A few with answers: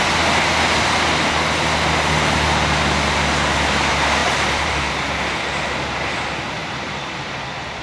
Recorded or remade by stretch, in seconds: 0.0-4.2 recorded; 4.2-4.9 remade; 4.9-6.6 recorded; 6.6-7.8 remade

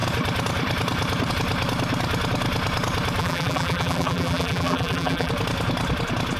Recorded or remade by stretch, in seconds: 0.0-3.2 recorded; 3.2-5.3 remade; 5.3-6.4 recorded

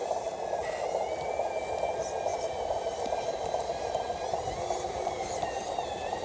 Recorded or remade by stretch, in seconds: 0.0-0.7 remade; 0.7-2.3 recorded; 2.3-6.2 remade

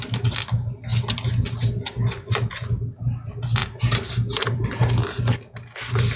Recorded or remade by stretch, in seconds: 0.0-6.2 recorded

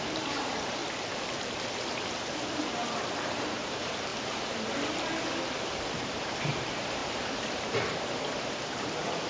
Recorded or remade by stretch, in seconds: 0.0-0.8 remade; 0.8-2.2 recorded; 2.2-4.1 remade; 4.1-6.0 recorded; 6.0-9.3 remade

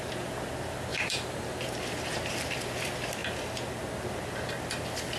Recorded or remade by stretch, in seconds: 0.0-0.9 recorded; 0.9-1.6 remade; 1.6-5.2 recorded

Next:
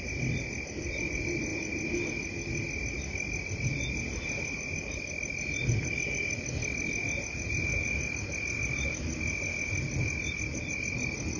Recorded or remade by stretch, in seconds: 0.0-11.4 recorded